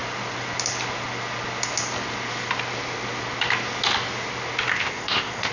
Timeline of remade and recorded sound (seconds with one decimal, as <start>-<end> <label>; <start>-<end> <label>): 0.0-4.7 recorded; 4.7-5.5 remade